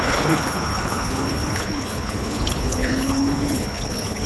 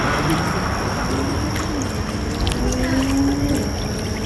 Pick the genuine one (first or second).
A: second